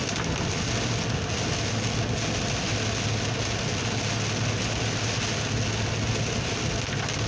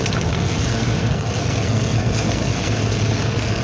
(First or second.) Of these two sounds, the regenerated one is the second